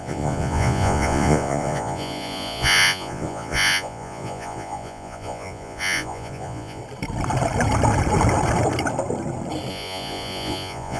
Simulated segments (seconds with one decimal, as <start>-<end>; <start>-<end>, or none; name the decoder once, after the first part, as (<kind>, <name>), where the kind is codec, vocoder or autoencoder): 0.0-6.8 (vocoder, Vocos); 9.7-11.0